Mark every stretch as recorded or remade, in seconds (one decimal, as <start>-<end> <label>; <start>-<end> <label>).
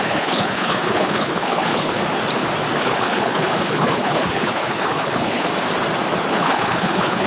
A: 0.0-2.0 remade; 2.0-2.8 recorded; 2.8-5.5 remade; 5.5-6.3 recorded; 6.3-7.3 remade